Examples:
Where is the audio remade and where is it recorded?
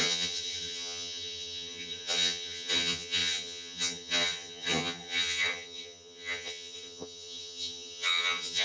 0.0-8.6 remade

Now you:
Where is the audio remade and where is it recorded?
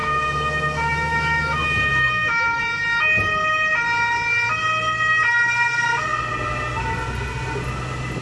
0.0-2.6 remade; 2.6-8.2 recorded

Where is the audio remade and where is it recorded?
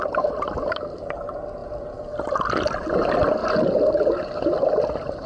0.0-3.4 recorded; 3.4-5.3 remade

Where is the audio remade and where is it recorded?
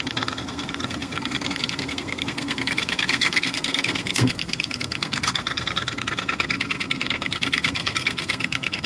0.0-8.9 remade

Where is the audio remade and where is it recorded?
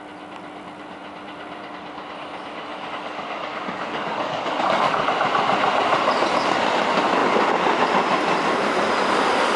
0.0-2.7 recorded; 2.7-5.1 remade; 5.1-9.6 recorded